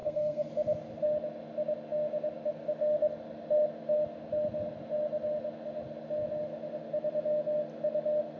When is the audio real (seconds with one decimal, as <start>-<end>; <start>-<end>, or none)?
0.5-8.4